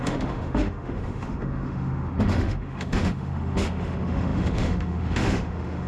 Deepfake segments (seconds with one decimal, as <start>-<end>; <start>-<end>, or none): 0.0-5.9